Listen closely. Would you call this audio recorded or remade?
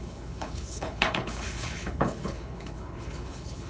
remade